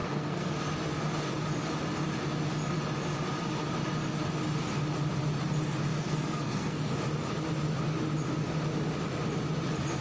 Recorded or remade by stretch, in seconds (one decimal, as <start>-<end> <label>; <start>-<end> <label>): 0.0-0.5 remade; 0.5-5.9 recorded; 5.9-6.9 remade; 6.9-10.0 recorded